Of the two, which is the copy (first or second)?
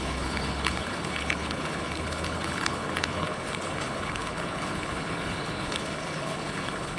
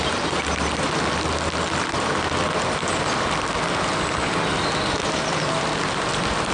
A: first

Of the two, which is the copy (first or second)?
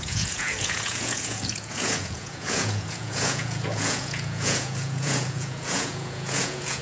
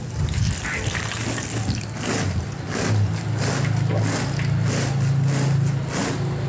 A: first